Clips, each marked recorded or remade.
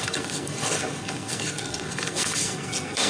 remade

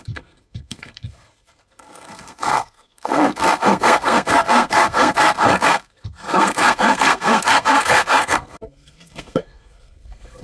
remade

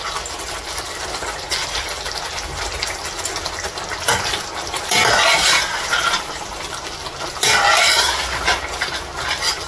recorded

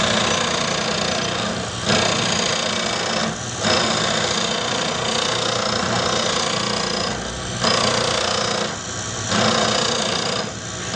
recorded